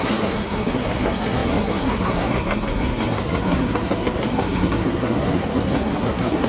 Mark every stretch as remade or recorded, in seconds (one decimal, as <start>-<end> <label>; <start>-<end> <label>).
0.0-6.5 remade